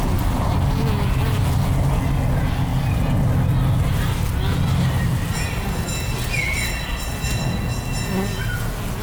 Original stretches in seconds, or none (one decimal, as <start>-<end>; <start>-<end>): 0.0-9.0